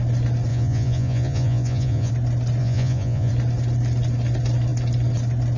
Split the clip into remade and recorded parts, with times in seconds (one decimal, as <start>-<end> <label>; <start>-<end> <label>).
0.0-0.5 recorded; 0.5-2.1 remade; 2.1-2.6 recorded; 2.6-3.3 remade; 3.3-5.6 recorded